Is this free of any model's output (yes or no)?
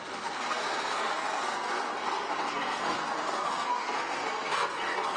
no